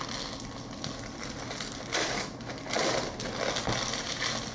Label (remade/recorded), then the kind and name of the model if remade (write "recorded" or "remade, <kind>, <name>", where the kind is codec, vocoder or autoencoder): recorded